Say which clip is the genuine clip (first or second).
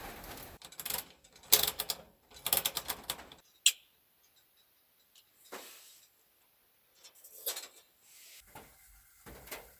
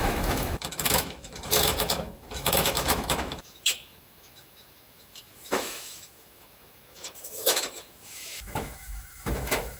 first